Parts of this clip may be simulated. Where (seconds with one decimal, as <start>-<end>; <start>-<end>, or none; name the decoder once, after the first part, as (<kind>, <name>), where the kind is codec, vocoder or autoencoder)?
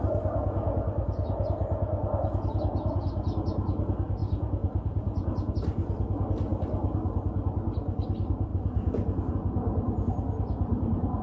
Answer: 4.2-5.5 (vocoder, Vocos); 8.5-9.3